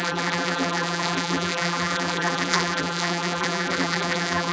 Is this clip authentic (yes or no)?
no